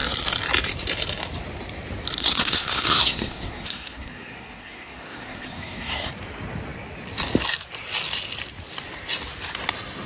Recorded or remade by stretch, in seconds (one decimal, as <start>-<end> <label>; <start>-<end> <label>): 0.0-2.2 recorded; 2.2-6.1 remade; 6.1-10.1 recorded